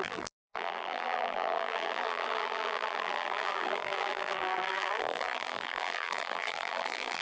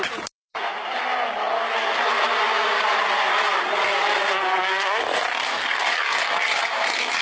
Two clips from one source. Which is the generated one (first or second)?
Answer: first